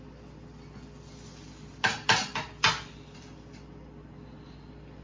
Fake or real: real